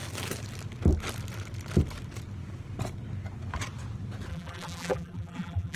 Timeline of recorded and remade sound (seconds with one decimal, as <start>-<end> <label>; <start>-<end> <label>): 0.0-4.3 recorded; 4.3-5.8 remade